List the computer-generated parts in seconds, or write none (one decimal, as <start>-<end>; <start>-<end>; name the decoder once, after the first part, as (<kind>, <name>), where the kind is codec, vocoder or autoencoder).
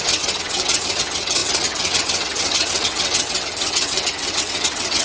0.0-5.0 (vocoder, WaveNeXt)